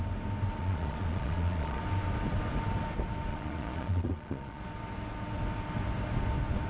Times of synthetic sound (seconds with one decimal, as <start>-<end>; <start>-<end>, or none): 0.6-1.8; 3.3-4.6